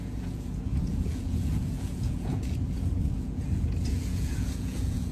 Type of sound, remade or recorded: remade